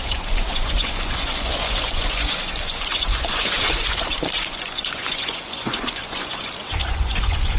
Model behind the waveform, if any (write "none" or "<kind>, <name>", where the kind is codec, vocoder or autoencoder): vocoder, Vocos